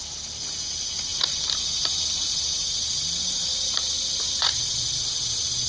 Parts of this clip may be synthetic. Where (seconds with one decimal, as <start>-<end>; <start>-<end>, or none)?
1.1-2.5; 3.5-4.4